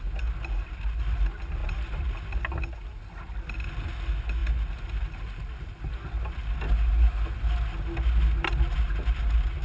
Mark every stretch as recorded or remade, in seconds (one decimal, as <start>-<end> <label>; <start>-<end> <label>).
0.0-9.6 recorded